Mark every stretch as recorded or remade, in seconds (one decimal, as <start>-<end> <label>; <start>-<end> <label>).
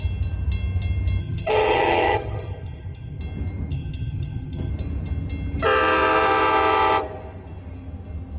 0.0-1.2 recorded; 1.2-3.2 remade; 3.2-3.7 recorded; 3.7-4.7 remade; 4.7-8.4 recorded